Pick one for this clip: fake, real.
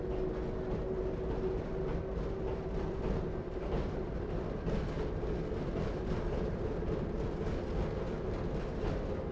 real